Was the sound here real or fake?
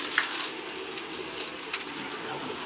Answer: real